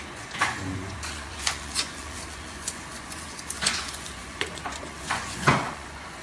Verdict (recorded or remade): remade